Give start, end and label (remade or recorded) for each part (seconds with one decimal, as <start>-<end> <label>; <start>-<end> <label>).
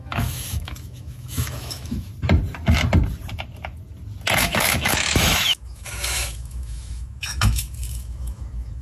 0.0-2.1 remade; 2.1-4.4 recorded; 4.4-8.8 remade